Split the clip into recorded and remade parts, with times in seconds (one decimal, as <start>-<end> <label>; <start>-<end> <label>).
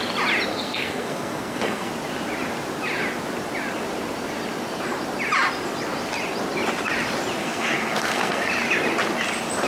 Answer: 0.0-0.5 recorded; 0.5-1.9 remade; 1.9-7.4 recorded; 7.4-8.5 remade; 8.5-9.7 recorded